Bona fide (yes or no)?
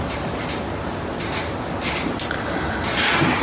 yes